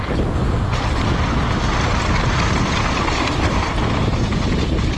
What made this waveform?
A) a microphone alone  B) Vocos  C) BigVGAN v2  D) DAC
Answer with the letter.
A